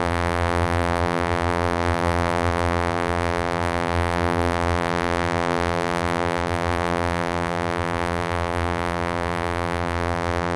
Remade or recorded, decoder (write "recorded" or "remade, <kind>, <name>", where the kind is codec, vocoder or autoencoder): remade, vocoder, BigVGAN v2